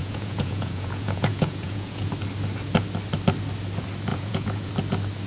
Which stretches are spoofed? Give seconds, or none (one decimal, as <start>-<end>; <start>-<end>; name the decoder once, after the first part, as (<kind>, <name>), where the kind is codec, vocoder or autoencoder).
0.0-2.1 (vocoder, Vocos); 4.1-4.7

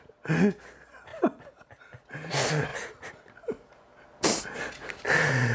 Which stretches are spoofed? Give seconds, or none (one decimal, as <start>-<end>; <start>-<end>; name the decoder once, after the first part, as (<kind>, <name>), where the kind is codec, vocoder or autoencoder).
1.1-2.3 (vocoder, BigVGAN v2); 2.7-3.7